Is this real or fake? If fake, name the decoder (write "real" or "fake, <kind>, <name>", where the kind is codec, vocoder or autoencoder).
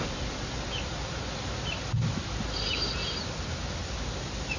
real